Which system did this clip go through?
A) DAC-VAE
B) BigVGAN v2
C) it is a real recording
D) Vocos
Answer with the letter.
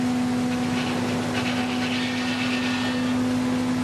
C